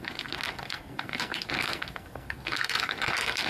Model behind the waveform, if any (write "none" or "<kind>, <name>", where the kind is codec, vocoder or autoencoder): codec, SNAC